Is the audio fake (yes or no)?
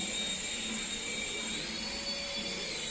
no